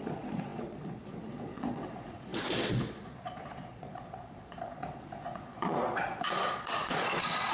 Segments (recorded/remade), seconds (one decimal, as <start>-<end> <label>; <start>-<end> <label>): 0.0-7.5 remade